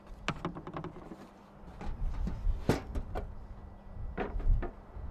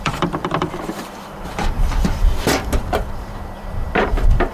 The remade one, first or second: second